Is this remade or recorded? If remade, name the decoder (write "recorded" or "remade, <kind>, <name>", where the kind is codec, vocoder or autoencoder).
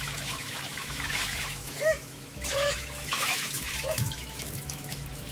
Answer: remade, autoencoder, DAC-VAE